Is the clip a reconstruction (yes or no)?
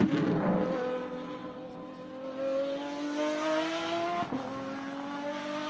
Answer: no